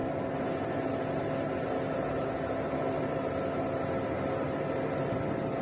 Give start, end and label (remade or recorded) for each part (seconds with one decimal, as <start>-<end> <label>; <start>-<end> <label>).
0.0-5.6 recorded